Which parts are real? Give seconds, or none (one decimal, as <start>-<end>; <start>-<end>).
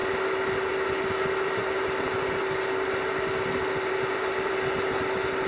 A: 0.0-5.5